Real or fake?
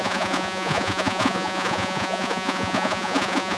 fake